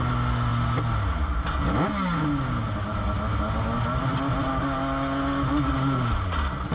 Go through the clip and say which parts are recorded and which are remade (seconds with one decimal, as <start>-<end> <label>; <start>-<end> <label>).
0.0-6.7 recorded